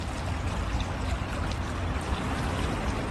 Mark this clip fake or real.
real